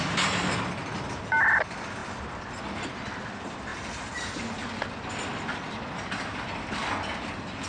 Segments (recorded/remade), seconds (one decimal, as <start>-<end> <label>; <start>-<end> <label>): 0.0-7.7 recorded